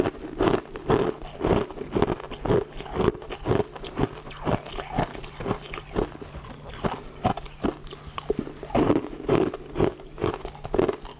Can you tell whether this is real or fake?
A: real